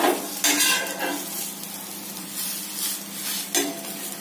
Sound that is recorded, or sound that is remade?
recorded